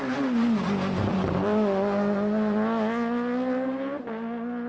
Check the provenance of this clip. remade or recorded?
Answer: recorded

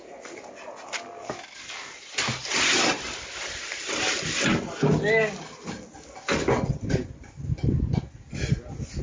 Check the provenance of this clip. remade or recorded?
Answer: recorded